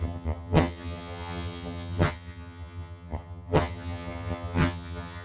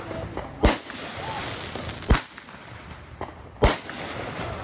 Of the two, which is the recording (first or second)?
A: second